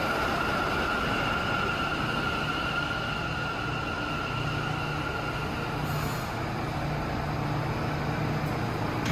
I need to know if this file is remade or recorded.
recorded